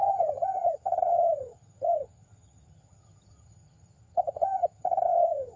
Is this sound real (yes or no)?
no